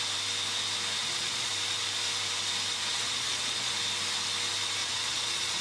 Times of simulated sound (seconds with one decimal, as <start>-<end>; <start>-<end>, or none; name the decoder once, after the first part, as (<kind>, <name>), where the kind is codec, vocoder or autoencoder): 1.0-1.5 (vocoder, Vocos); 2.8-3.7; 4.8-5.6